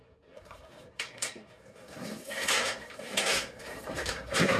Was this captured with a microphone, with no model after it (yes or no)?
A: no